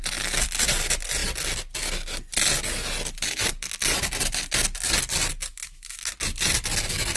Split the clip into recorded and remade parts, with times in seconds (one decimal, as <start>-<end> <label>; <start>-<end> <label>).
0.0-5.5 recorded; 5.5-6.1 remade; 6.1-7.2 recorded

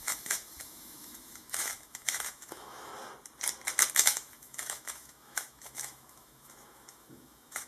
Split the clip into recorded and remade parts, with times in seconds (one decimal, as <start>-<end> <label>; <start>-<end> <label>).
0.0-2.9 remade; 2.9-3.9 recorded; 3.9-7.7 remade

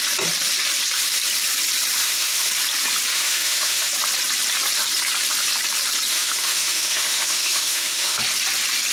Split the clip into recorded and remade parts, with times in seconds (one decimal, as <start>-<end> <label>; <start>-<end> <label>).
0.0-2.0 recorded; 2.0-2.5 remade; 2.5-3.1 recorded; 3.1-3.9 remade; 3.9-6.1 recorded; 6.1-8.2 remade; 8.2-8.9 recorded

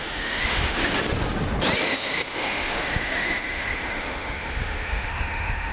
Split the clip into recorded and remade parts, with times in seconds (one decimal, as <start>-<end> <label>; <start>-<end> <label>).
0.0-0.8 remade; 0.8-1.8 recorded; 1.8-5.7 remade

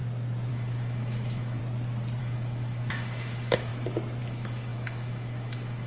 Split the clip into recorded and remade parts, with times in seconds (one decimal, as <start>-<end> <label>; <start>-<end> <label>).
0.0-0.5 recorded; 0.5-1.6 remade; 1.6-2.2 recorded; 2.2-3.7 remade; 3.7-4.2 recorded; 4.2-5.9 remade

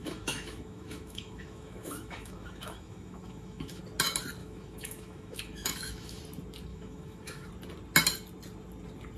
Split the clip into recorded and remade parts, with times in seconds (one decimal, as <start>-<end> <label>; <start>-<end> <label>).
0.0-3.8 remade; 3.8-4.4 recorded; 4.4-6.2 remade; 6.2-6.7 recorded; 6.7-7.5 remade; 7.5-9.2 recorded

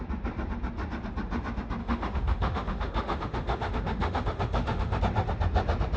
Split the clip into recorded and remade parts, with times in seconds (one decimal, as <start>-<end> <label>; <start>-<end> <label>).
0.0-1.8 recorded; 1.8-5.0 remade; 5.0-6.0 recorded

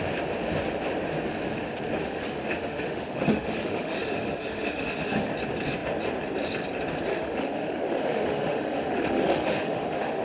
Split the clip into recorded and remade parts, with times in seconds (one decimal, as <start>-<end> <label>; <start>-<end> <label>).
0.0-2.0 recorded; 2.0-5.3 remade; 5.3-7.1 recorded; 7.1-10.2 remade